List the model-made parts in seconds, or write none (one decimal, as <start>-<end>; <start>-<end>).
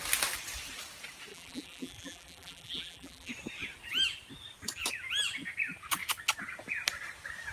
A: 1.3-3.3